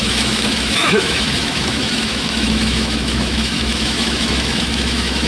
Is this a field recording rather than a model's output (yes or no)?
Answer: no